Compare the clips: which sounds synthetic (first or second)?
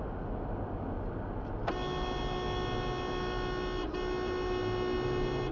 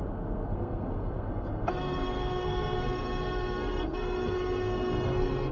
second